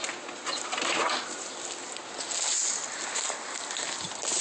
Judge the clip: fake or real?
real